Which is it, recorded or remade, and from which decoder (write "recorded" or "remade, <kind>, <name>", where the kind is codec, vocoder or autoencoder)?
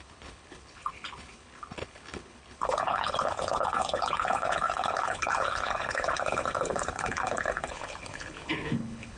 remade, codec, HILCodec